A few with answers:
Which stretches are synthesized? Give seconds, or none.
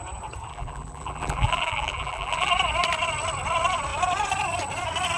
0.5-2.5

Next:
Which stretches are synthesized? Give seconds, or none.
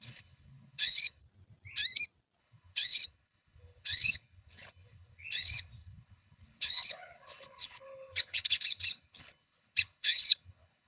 0.0-1.2; 2.4-10.9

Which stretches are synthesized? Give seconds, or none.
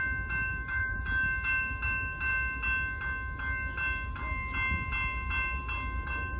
0.5-1.0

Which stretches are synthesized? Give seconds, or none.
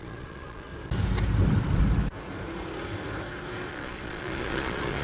0.0-0.7; 3.7-5.0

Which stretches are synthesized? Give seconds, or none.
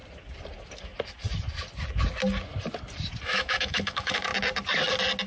3.2-4.3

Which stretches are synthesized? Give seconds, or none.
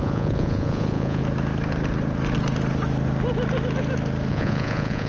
0.0-1.2; 4.3-5.1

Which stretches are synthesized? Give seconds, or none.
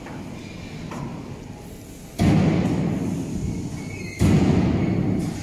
none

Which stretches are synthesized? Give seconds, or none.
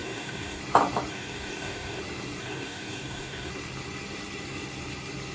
0.0-0.6; 1.1-2.0; 2.4-3.5